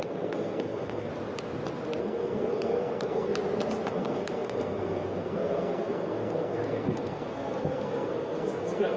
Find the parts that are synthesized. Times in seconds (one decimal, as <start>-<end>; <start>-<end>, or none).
0.0-1.1; 2.0-3.3; 3.9-9.0